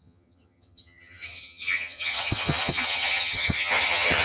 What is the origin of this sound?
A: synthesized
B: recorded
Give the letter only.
A